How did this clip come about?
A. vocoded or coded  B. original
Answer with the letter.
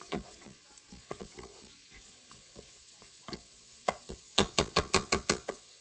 A